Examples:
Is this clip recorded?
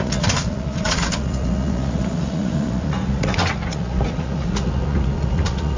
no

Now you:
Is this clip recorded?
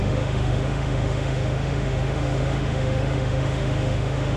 no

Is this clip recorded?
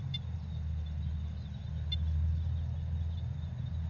yes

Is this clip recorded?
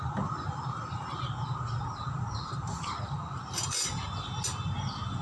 yes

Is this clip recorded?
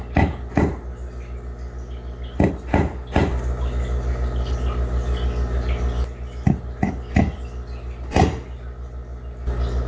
yes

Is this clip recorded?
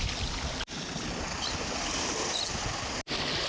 yes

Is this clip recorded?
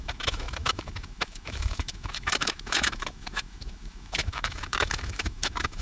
no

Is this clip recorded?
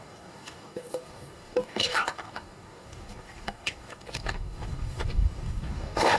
no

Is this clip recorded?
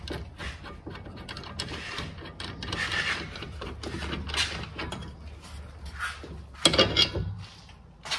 yes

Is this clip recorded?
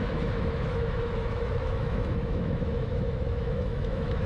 no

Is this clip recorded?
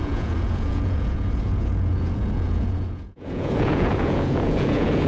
no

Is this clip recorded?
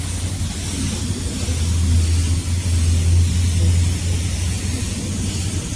yes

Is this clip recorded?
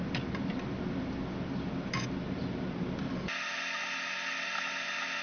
yes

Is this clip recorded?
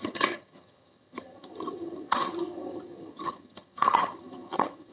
no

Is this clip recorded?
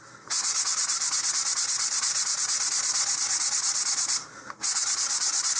yes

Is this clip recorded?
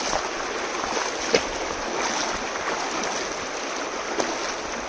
yes